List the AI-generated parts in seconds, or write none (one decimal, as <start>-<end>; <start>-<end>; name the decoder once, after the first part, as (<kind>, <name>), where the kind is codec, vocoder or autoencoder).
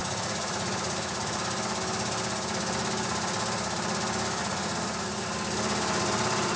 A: 0.0-1.4 (vocoder, Vocos); 4.4-5.2